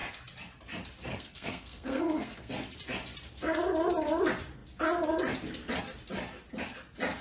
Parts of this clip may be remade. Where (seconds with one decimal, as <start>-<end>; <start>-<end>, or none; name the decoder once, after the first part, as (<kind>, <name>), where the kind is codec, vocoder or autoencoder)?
1.1-2.5 (codec, SNAC)